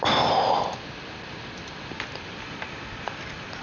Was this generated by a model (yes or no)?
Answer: no